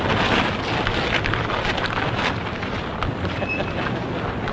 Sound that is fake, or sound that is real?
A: real